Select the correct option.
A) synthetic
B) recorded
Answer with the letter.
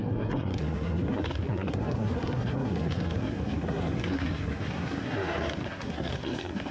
A